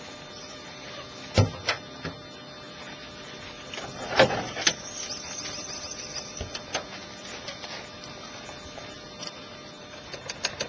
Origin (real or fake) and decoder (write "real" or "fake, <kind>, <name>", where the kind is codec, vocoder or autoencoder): real